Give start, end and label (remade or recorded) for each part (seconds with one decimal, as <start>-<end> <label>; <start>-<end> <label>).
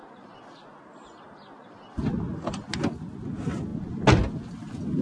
0.0-5.0 recorded